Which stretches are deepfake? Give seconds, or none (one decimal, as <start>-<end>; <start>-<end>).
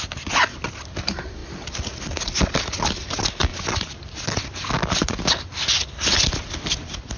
none